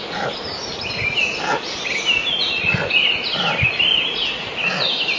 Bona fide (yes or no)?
yes